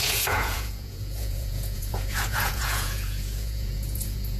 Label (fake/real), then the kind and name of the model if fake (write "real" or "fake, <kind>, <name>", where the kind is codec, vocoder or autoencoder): fake, vocoder, Vocos